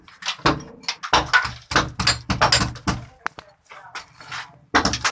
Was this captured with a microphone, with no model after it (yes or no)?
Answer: yes